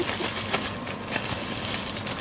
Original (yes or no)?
yes